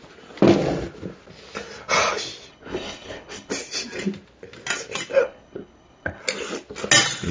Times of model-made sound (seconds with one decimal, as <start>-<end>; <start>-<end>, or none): 2.5-3.5; 5.2-6.2